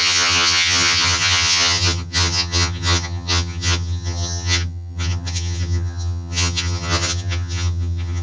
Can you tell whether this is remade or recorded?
remade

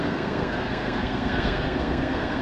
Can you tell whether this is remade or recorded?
remade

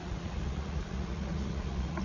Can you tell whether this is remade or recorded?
remade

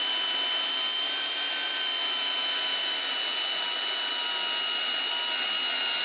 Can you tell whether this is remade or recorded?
recorded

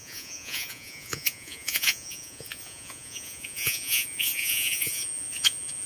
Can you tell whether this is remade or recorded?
remade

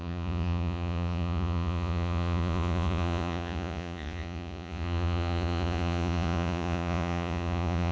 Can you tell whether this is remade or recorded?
remade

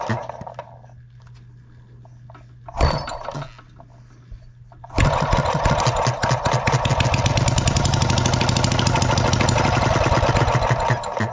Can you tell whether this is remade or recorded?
recorded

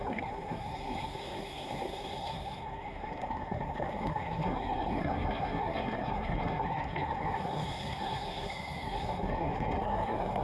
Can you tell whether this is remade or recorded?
remade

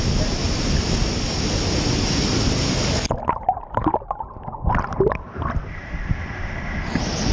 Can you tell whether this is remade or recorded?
recorded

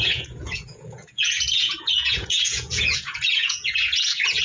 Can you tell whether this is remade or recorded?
remade